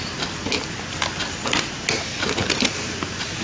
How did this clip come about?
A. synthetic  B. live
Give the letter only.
B